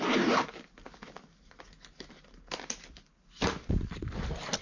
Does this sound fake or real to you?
real